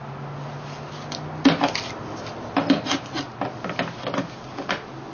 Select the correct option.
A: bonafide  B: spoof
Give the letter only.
A